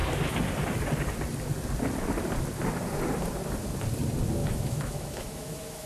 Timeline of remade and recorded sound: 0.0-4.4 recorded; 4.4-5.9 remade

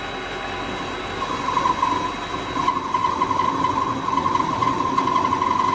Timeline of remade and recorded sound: 0.0-3.0 recorded; 3.0-3.5 remade; 3.5-4.6 recorded; 4.6-5.3 remade; 5.3-5.7 recorded